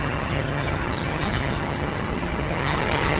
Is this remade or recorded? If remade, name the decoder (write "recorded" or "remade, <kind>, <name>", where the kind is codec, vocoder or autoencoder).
remade, vocoder, HiFi-GAN